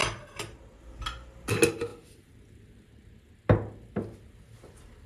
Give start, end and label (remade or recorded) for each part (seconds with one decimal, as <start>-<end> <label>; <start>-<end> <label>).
0.0-5.1 recorded